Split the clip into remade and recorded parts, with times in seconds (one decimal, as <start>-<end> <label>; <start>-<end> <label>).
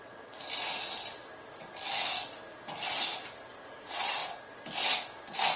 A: 0.0-0.4 remade; 0.4-3.8 recorded; 3.8-4.2 remade; 4.2-5.6 recorded